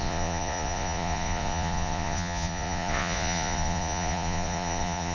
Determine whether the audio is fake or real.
fake